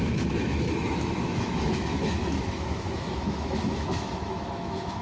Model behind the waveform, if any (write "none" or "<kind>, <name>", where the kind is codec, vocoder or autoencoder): autoencoder, DAC-VAE